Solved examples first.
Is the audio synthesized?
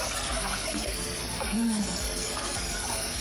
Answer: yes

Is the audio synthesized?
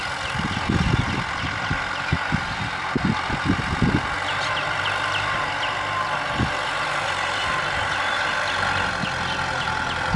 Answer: no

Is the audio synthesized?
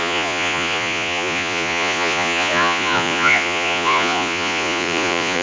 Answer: yes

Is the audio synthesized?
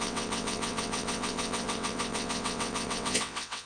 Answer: yes